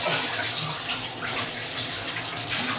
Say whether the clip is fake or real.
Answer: real